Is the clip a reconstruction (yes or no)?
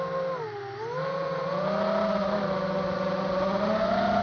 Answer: no